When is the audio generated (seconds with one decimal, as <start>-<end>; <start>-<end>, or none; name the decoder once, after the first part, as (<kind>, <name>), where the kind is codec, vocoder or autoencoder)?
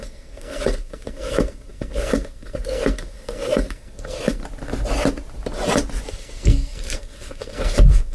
0.0-4.4 (codec, SNAC); 6.1-8.1